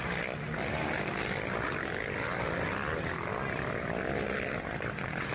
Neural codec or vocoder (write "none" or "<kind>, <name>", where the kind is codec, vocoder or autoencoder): none